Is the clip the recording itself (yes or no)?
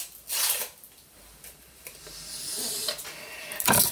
yes